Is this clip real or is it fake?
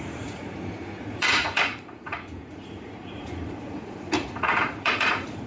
fake